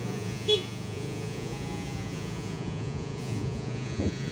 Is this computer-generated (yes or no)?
yes